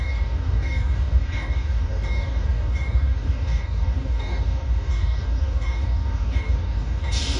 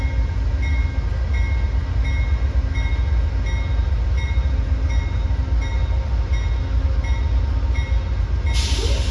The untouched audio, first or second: second